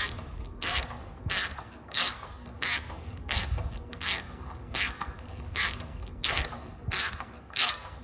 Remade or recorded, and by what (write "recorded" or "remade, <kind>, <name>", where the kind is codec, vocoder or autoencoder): remade, codec, SNAC